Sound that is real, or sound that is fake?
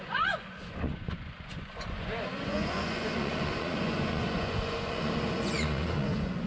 fake